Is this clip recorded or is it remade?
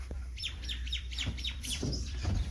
remade